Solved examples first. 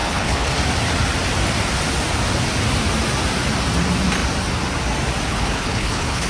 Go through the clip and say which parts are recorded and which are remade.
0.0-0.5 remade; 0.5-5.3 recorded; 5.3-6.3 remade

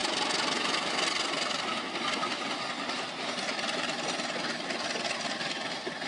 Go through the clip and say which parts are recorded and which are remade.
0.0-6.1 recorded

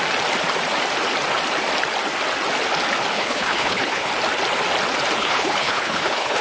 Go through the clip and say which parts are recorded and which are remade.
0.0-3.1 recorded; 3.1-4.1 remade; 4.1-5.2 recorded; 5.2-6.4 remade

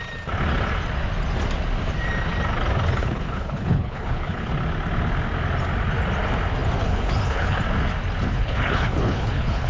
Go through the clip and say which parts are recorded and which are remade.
0.0-3.0 recorded; 3.0-4.5 remade; 4.5-6.8 recorded; 6.8-7.6 remade; 7.6-8.3 recorded; 8.3-9.7 remade

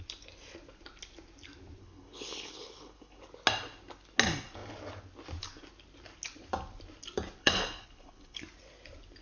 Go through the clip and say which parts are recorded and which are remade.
0.0-1.8 recorded; 1.8-3.2 remade; 3.2-7.4 recorded; 7.4-8.4 remade; 8.4-9.2 recorded

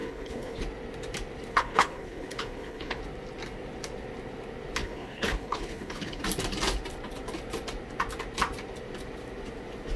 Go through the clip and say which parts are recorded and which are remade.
0.0-0.6 remade; 0.6-1.5 recorded; 1.5-3.0 remade; 3.0-4.8 recorded; 4.8-6.2 remade; 6.2-10.0 recorded

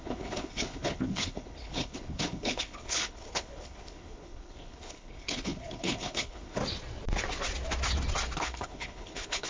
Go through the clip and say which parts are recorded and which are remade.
0.0-6.6 remade; 6.6-8.4 recorded; 8.4-9.5 remade